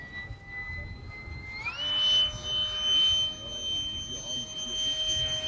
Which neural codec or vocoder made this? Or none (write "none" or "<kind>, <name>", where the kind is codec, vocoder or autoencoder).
none